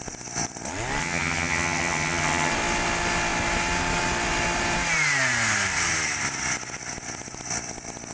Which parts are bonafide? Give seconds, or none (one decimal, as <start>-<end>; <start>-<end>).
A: 0.0-1.0; 2.5-8.1